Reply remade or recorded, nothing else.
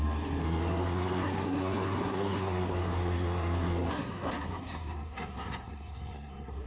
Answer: remade